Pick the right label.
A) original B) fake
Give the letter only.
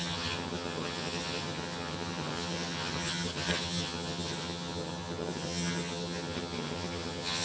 B